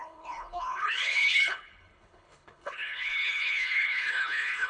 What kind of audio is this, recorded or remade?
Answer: remade